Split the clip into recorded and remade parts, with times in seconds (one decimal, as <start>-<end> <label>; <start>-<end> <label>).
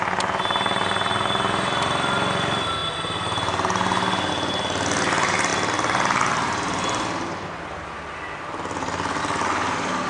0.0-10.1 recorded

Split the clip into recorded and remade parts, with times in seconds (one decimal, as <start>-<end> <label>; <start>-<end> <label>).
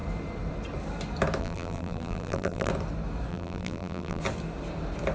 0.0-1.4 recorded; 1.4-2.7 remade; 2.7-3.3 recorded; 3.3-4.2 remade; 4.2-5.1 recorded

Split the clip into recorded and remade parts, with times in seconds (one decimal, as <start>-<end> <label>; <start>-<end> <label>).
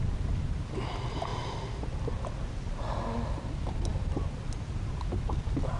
0.0-1.3 recorded; 1.3-2.1 remade; 2.1-5.8 recorded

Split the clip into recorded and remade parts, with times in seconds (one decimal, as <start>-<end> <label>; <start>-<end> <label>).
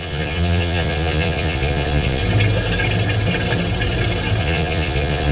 0.0-2.2 remade; 2.2-4.4 recorded; 4.4-5.3 remade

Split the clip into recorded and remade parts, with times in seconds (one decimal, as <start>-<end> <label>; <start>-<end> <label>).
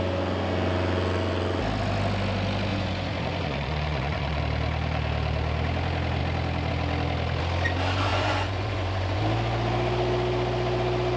0.0-2.7 recorded; 2.7-4.4 remade; 4.4-8.1 recorded; 8.1-9.2 remade; 9.2-11.2 recorded